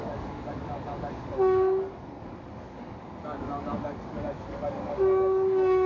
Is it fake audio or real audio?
fake